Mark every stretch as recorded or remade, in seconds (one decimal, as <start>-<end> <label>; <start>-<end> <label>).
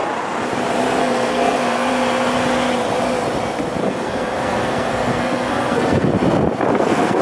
0.0-1.0 recorded; 1.0-1.9 remade; 1.9-3.8 recorded; 3.8-6.1 remade; 6.1-6.7 recorded; 6.7-7.2 remade